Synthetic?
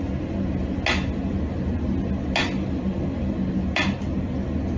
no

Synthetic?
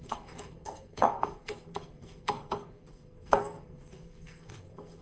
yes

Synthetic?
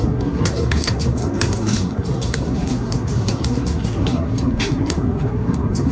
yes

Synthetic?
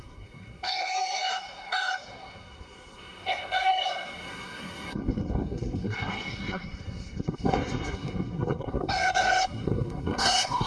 yes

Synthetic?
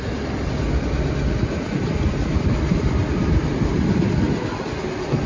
no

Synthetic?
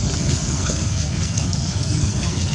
yes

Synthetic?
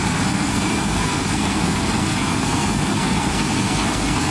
yes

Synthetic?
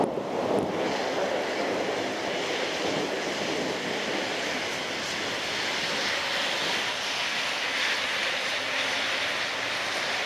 no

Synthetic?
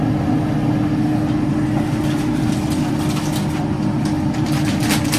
no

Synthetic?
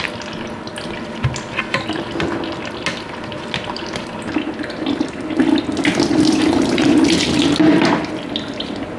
no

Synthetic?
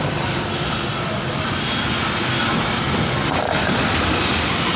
no